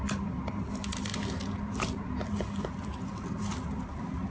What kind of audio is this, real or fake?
real